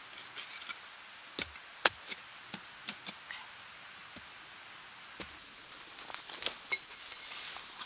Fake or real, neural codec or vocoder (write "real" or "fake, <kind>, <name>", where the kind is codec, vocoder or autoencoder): real